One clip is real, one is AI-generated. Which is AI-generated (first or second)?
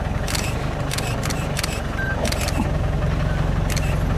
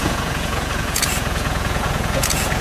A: second